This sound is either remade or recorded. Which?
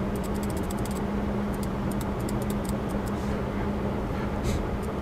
recorded